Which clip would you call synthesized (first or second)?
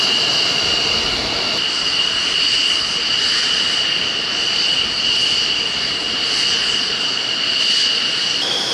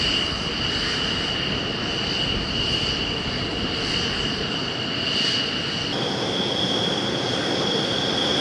first